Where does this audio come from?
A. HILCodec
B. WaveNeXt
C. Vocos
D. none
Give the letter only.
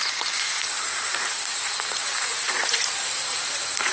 C